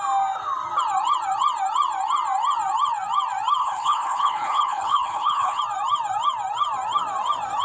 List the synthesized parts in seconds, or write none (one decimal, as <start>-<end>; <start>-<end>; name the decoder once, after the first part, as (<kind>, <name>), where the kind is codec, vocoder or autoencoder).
3.6-5.6 (codec, HILCodec)